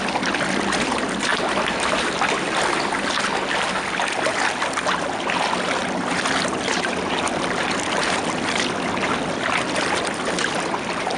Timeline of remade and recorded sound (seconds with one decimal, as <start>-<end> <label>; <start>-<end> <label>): 0.0-11.2 recorded